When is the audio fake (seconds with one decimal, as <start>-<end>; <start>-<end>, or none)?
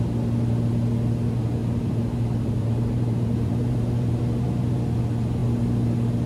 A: 1.6-4.8